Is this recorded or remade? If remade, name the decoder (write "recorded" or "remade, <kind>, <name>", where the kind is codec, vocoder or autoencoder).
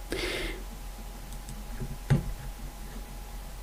recorded